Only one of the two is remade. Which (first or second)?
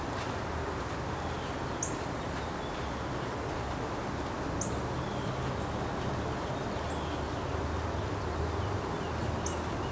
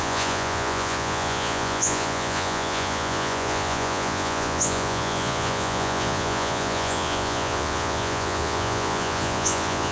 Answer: second